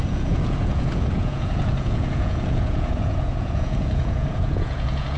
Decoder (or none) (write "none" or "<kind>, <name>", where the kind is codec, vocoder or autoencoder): vocoder, Vocos